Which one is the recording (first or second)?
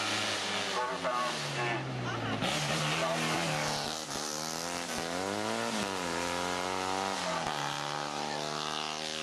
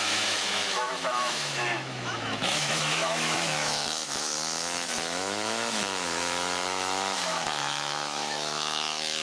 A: first